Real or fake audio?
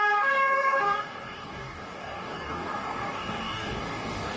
fake